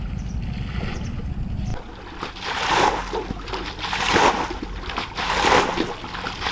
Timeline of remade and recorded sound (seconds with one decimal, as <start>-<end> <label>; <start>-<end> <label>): 0.0-6.5 recorded